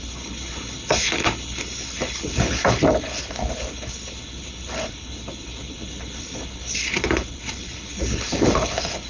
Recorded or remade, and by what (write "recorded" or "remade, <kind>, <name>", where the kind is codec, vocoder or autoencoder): remade, codec, HILCodec